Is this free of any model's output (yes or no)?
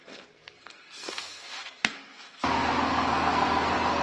no